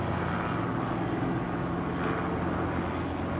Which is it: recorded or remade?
recorded